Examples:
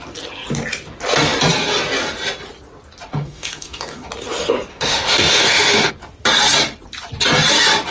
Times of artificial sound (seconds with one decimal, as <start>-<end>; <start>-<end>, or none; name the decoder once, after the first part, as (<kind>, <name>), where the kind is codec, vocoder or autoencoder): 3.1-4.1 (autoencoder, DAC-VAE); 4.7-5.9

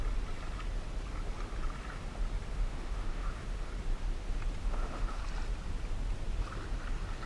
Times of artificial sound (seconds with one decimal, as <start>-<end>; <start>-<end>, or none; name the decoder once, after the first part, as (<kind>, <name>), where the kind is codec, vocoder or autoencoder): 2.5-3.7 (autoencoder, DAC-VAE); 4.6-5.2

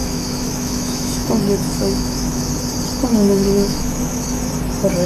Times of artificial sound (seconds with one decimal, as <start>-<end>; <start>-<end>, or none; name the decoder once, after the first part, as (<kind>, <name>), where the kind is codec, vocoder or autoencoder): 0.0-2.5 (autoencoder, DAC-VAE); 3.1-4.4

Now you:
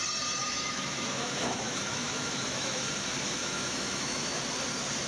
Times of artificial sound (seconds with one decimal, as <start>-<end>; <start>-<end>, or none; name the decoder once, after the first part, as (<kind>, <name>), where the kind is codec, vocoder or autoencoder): 0.4-2.8 (autoencoder, DAC-VAE); 3.4-4.4